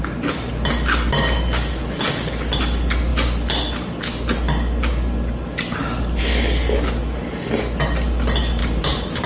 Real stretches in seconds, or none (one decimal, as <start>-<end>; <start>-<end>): 0.0-8.6